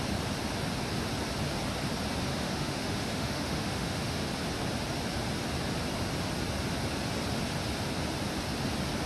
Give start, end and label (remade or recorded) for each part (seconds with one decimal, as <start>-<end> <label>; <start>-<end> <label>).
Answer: 0.0-2.3 recorded; 2.3-4.3 remade; 4.3-9.1 recorded